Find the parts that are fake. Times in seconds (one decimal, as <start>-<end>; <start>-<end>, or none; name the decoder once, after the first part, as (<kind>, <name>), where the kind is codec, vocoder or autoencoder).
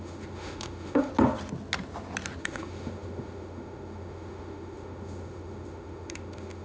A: 0.0-1.1 (autoencoder, DAC-VAE); 2.4-6.6